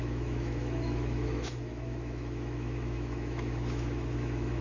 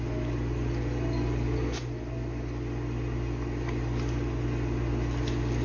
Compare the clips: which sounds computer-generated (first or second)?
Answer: first